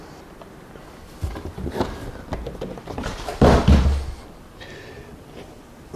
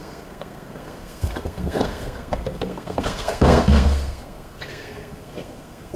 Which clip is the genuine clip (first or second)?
first